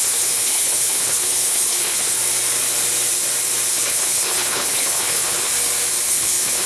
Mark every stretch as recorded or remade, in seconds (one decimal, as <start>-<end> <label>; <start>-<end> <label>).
0.0-2.2 remade; 2.2-3.7 recorded; 3.7-5.5 remade; 5.5-6.1 recorded; 6.1-6.7 remade